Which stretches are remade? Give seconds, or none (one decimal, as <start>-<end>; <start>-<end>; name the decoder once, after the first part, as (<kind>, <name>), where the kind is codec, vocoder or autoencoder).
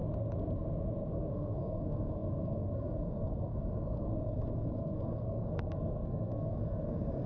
1.1-7.3 (codec, SNAC)